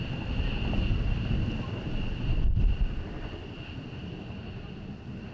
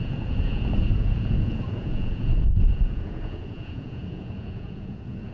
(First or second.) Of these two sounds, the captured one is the first